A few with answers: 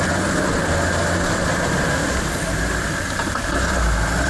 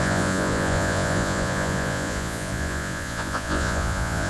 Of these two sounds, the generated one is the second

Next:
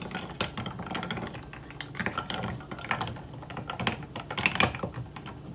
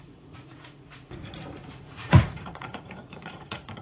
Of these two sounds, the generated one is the second